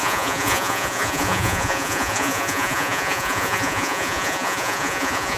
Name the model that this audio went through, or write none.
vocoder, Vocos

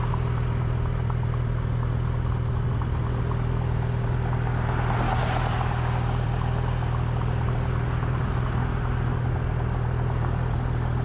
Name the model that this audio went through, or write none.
none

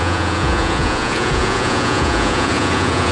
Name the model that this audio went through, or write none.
vocoder, Vocos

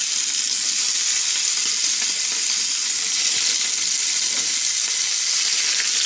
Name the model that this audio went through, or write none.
none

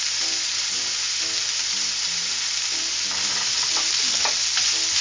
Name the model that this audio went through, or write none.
none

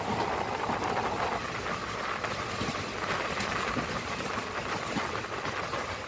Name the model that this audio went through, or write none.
none